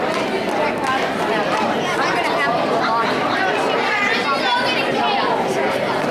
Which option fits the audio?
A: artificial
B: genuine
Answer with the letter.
B